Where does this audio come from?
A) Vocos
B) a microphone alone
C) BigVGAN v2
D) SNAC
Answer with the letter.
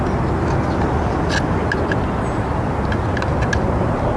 B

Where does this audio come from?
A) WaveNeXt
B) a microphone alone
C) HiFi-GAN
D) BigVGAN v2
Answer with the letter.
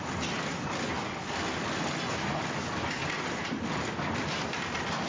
B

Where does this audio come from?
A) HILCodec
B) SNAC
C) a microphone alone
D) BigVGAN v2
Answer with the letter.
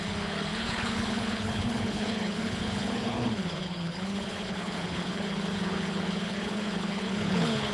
A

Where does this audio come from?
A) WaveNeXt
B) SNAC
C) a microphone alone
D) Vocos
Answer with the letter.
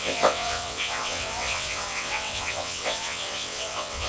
A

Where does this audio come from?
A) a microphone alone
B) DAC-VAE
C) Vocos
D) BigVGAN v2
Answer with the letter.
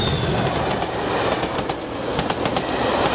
A